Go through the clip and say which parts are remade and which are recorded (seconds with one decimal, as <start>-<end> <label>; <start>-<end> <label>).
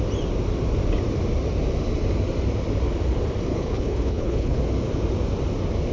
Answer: 0.0-3.5 recorded; 3.5-4.6 remade; 4.6-5.9 recorded